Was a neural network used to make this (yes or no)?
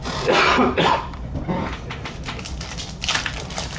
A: yes